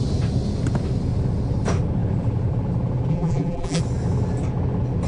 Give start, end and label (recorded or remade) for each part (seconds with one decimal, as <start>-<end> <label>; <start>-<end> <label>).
0.0-3.1 recorded; 3.1-3.8 remade; 3.8-5.1 recorded